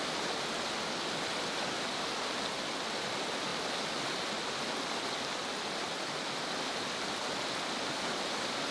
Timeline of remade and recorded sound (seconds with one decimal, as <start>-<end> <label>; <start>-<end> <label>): 0.0-8.7 recorded